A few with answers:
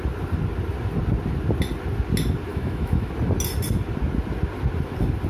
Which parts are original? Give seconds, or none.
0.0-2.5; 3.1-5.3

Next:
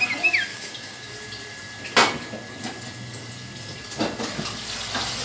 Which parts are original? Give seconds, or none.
0.0-0.5; 1.1-5.2